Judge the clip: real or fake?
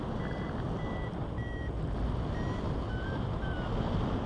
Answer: real